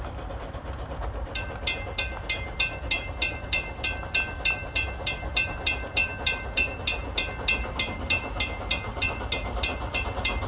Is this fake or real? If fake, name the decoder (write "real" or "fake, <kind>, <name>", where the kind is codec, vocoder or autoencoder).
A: real